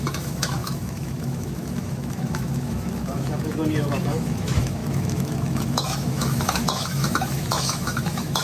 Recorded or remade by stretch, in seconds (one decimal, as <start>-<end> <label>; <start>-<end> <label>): 0.0-8.4 remade